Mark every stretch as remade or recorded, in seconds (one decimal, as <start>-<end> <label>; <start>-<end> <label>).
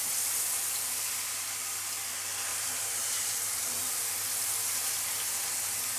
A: 0.0-2.5 recorded; 2.5-4.1 remade; 4.1-6.0 recorded